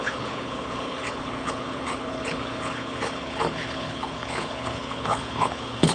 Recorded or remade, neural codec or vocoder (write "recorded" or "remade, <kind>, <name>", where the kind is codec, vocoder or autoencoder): remade, codec, HILCodec